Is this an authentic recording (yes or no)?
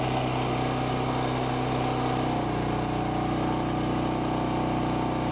yes